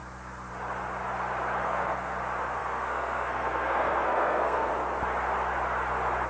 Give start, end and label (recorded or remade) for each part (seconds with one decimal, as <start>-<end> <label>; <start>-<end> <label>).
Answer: 0.0-1.6 recorded; 1.6-2.2 remade; 2.2-2.6 recorded; 2.6-4.7 remade; 4.7-6.3 recorded